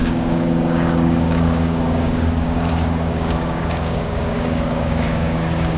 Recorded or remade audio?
remade